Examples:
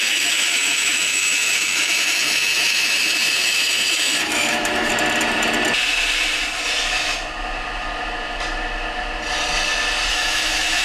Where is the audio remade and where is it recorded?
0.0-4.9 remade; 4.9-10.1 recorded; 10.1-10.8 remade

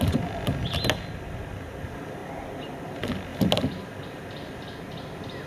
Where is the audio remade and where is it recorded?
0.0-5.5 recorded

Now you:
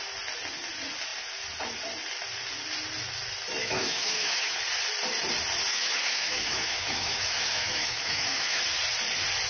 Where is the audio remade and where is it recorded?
0.0-3.6 recorded; 3.6-4.6 remade; 4.6-5.7 recorded; 5.7-8.6 remade; 8.6-9.5 recorded

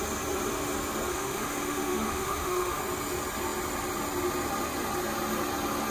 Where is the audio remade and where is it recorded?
0.0-1.1 recorded; 1.1-2.8 remade; 2.8-5.9 recorded

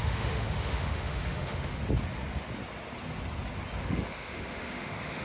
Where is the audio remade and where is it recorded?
0.0-1.8 remade; 1.8-3.8 recorded; 3.8-5.2 remade

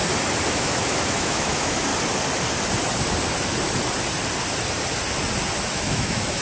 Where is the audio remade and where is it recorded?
0.0-0.5 recorded; 0.5-1.9 remade; 1.9-5.7 recorded; 5.7-6.4 remade

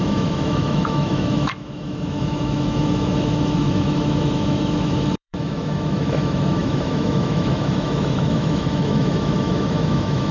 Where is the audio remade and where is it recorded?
0.0-10.3 remade